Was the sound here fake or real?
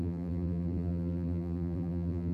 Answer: fake